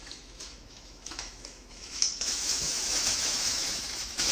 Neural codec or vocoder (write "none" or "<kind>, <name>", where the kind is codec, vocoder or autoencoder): autoencoder, DAC-VAE